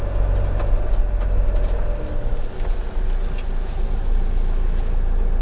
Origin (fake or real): real